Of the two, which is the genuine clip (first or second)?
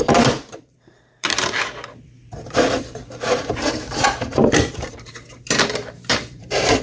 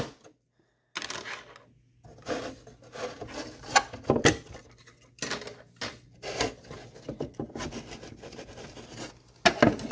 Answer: second